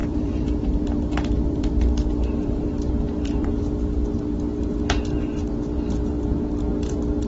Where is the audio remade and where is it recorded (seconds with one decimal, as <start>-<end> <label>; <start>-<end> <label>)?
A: 0.0-3.6 remade; 3.6-7.3 recorded